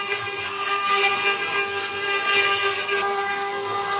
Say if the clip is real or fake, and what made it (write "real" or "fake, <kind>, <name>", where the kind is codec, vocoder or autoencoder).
fake, codec, SNAC